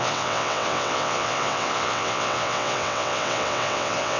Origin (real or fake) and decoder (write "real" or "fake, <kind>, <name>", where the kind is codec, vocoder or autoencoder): fake, vocoder, WaveNeXt